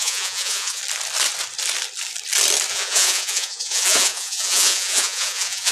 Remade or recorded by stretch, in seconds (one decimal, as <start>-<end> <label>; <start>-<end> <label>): 0.0-0.8 remade; 0.8-2.7 recorded; 2.7-5.7 remade